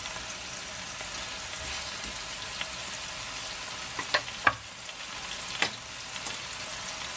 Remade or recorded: recorded